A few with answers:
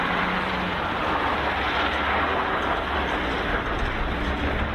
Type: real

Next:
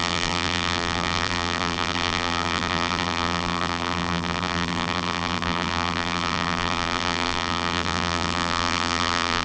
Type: fake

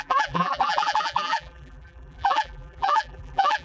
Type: fake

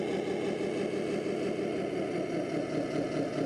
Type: real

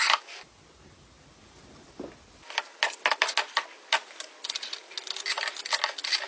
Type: real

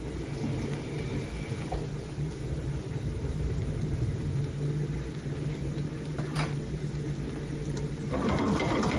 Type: fake